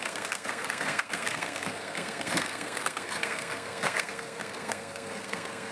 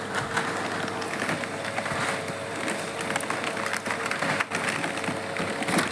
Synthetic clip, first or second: first